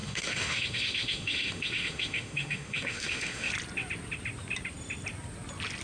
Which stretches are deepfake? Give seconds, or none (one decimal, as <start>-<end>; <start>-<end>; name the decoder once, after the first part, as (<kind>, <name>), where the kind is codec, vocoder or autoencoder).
0.0-3.5 (autoencoder, DAC-VAE)